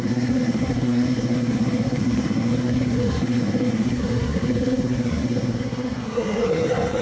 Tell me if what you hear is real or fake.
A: fake